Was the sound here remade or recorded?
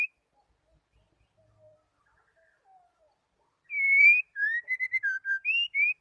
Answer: remade